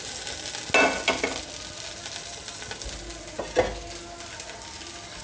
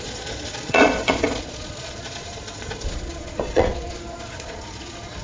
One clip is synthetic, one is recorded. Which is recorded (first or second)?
first